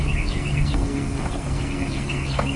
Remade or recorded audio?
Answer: remade